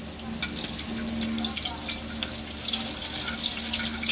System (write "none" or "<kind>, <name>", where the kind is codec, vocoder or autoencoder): none